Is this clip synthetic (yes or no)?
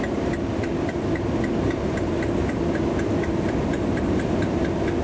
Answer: no